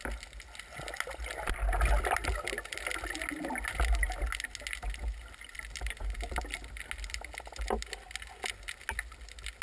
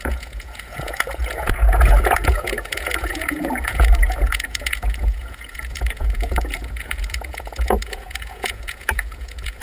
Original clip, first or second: first